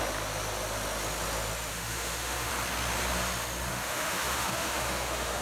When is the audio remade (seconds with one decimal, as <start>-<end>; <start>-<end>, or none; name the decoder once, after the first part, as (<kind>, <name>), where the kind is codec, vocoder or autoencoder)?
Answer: 1.7-2.5 (autoencoder, DAC-VAE); 3.7-5.4